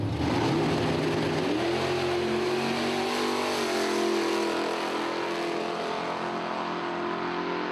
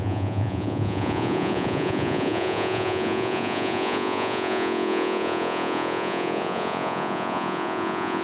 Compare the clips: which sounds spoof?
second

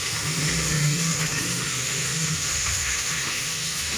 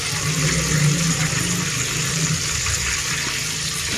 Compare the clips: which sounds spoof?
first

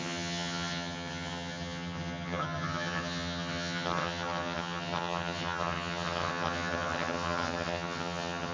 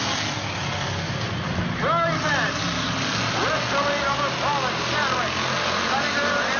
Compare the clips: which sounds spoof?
first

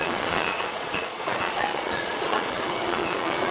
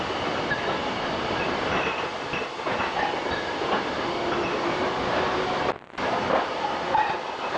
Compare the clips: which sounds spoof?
first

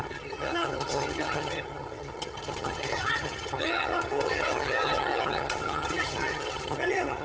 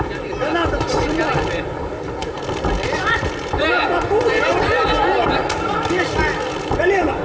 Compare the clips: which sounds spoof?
first